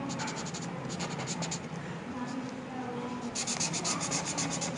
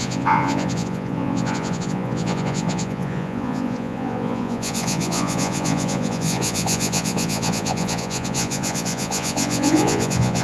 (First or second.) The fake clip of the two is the second